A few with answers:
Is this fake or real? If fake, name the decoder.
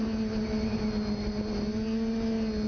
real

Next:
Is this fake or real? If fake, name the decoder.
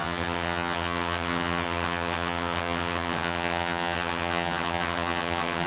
fake, vocoder, HiFi-GAN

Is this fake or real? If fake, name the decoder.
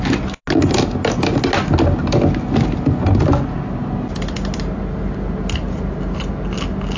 real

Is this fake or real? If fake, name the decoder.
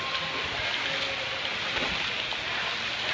real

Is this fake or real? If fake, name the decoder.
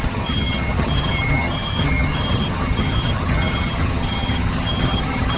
fake, vocoder, HiFi-GAN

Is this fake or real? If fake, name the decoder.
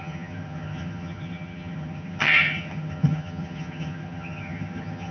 fake, vocoder, HiFi-GAN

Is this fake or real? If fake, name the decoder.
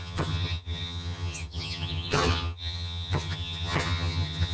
fake, vocoder, HiFi-GAN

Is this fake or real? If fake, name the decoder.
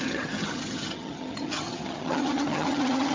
fake, vocoder, HiFi-GAN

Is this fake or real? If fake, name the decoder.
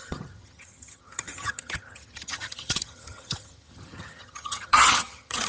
fake, vocoder, HiFi-GAN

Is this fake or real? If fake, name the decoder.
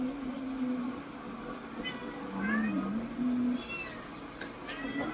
real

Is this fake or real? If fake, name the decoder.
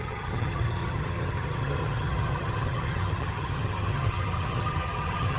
fake, vocoder, HiFi-GAN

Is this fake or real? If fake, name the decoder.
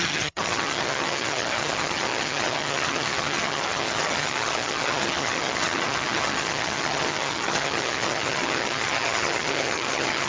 fake, vocoder, HiFi-GAN